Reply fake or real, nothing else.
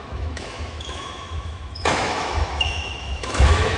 fake